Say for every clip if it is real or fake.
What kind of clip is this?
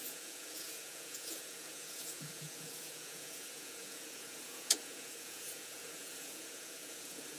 fake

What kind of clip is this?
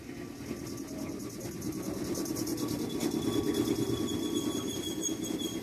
real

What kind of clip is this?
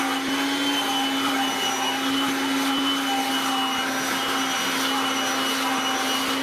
real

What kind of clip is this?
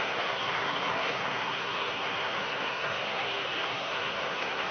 fake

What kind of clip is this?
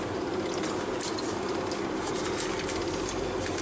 real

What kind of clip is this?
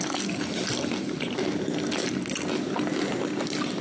real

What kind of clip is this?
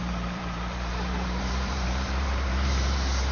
fake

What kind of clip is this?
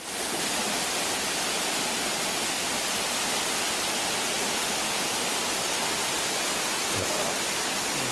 real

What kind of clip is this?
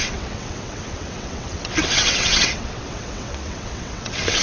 fake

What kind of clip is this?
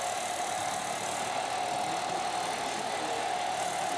real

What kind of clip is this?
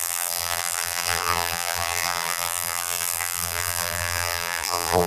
fake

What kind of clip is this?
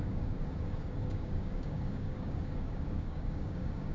fake